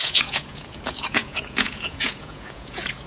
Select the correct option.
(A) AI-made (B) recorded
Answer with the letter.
A